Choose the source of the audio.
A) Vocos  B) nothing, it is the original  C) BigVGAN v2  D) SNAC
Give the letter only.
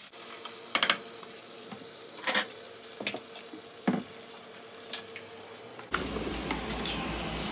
B